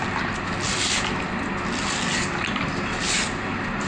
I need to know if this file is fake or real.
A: real